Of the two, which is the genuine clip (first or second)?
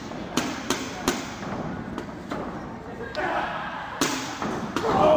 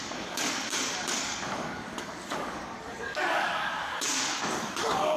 first